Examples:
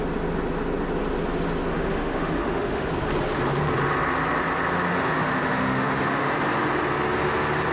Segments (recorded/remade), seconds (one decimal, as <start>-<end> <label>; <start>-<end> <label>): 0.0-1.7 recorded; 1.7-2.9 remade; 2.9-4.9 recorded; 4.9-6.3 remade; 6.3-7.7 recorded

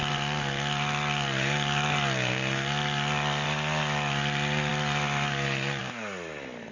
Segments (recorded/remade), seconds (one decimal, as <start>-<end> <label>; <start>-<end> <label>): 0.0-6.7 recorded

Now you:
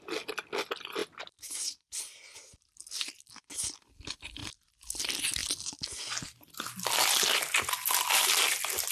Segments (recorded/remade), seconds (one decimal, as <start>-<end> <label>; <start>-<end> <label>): 0.0-8.9 recorded

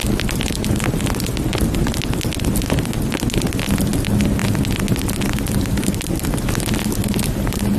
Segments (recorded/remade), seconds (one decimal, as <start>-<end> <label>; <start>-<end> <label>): 0.0-7.8 recorded

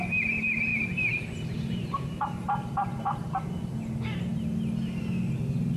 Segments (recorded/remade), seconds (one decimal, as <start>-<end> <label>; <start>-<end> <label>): 0.0-5.8 recorded